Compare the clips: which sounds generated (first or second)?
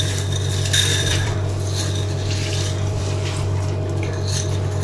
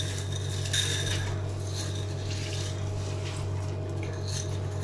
first